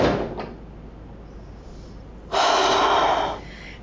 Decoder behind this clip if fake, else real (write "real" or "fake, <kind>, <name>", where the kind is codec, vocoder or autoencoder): real